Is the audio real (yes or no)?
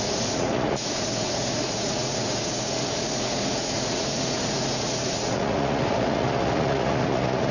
no